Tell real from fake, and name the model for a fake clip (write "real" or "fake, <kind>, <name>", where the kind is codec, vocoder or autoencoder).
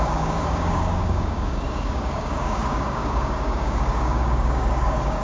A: fake, codec, DAC